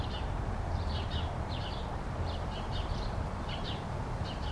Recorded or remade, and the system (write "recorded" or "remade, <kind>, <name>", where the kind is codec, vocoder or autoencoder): remade, vocoder, BigVGAN v2